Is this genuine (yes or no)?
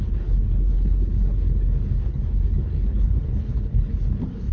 no